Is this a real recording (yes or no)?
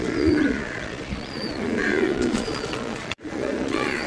no